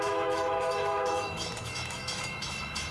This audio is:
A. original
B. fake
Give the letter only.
B